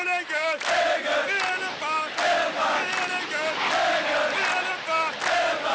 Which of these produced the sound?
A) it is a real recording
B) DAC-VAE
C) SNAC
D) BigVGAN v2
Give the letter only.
A